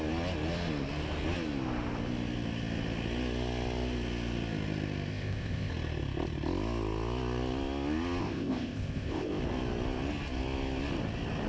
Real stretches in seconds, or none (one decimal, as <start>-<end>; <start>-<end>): 0.0-5.1; 5.7-8.2; 9.4-11.5